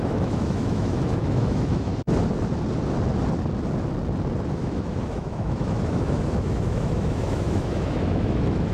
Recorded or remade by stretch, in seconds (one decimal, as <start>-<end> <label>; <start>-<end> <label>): 0.0-1.9 remade; 1.9-4.5 recorded; 4.5-8.7 remade